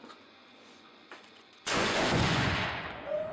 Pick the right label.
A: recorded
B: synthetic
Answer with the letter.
B